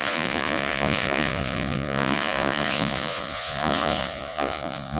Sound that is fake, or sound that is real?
fake